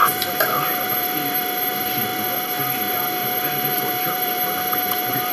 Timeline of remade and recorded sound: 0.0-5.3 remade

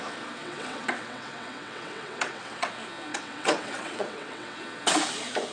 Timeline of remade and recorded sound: 0.0-0.4 recorded; 0.4-2.7 remade; 2.7-3.1 recorded; 3.1-4.6 remade; 4.6-5.5 recorded

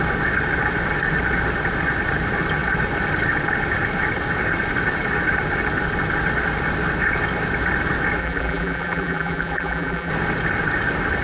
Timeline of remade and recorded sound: 0.0-8.2 recorded; 8.2-10.1 remade; 10.1-11.2 recorded